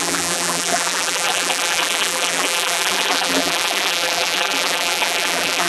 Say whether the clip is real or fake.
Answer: fake